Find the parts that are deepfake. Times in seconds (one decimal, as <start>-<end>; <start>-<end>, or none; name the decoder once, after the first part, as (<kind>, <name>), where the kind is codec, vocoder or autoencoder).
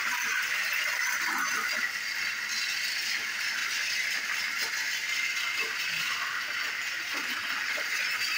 0.0-3.6 (vocoder, BigVGAN v2); 7.8-8.4